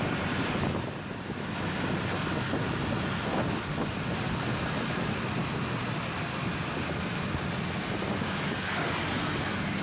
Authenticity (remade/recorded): recorded